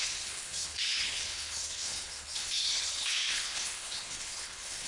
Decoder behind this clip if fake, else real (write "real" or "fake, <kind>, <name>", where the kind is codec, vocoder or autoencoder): fake, codec, HILCodec